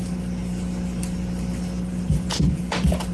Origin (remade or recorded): recorded